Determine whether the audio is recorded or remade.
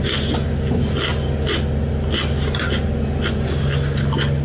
recorded